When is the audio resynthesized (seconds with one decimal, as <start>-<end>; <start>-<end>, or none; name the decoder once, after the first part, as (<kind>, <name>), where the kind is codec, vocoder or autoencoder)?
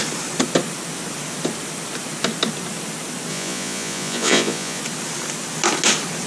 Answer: 3.3-4.8 (vocoder, Vocos)